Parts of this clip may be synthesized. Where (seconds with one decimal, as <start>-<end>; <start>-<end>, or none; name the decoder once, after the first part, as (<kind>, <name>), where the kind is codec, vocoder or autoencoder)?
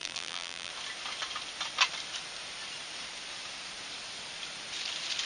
0.0-0.7 (vocoder, BigVGAN v2)